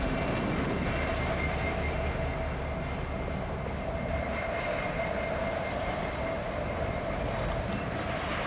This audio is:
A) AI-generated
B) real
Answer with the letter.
B